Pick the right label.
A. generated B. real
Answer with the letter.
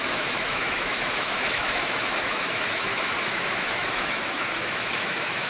A